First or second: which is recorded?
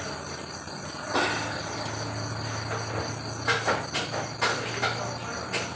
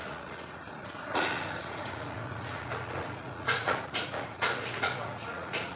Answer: first